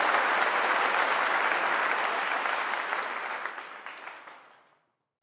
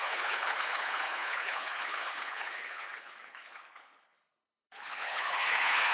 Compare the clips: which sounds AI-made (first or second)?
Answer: second